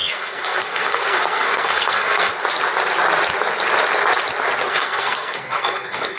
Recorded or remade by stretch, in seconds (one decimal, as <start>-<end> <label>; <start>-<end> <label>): 0.0-2.3 remade; 2.3-4.7 recorded; 4.7-6.2 remade